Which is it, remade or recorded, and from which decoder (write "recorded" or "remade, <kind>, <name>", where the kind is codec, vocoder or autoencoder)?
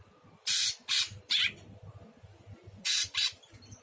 recorded